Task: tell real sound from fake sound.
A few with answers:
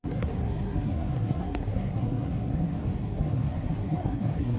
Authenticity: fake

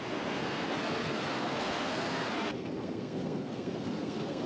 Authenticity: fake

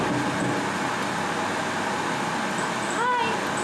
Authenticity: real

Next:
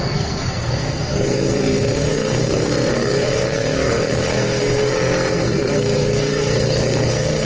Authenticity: fake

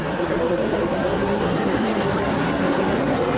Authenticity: fake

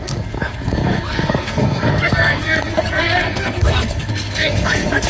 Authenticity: fake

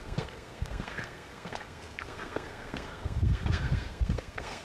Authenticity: fake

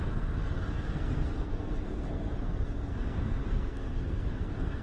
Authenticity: fake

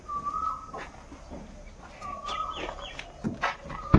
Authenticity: real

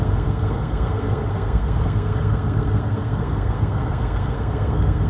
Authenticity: fake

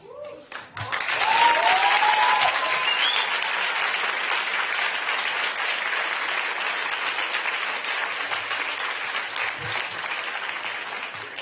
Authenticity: real